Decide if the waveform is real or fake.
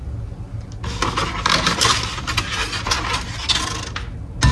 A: real